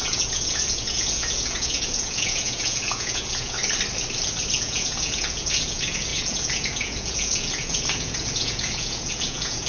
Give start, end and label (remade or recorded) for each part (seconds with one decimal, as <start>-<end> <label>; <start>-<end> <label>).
0.0-3.6 remade; 3.6-4.6 recorded; 4.6-9.7 remade